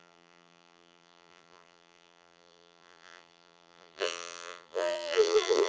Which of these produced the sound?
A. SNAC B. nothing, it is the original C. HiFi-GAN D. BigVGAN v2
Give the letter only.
D